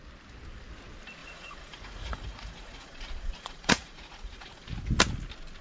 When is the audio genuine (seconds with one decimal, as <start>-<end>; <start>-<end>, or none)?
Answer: 0.0-1.2; 4.6-5.6